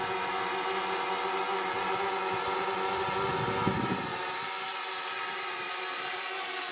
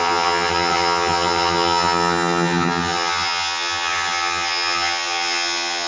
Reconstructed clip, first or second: second